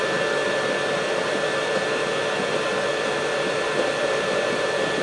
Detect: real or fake real